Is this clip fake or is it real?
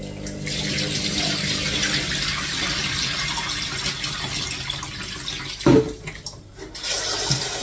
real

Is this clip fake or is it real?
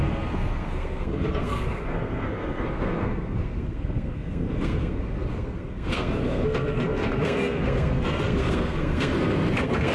fake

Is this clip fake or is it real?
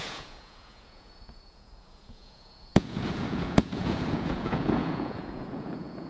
fake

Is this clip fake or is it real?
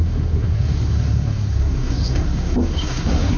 fake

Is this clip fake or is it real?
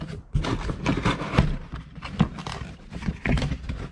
real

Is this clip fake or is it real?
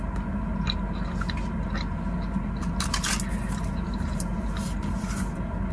real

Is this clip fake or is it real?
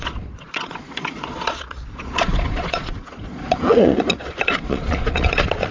fake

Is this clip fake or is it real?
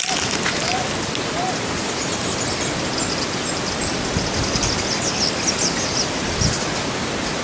real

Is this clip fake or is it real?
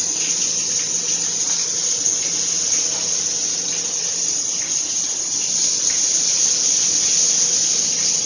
real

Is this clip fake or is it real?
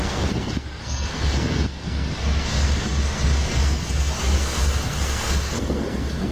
fake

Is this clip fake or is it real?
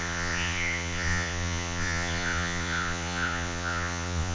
fake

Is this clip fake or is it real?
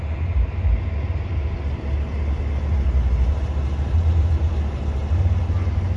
real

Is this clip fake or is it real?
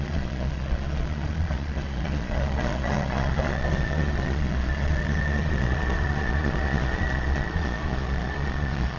fake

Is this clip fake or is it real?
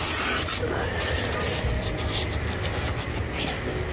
real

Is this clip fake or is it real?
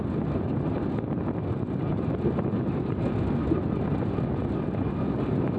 real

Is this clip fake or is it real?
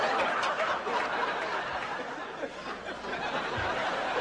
real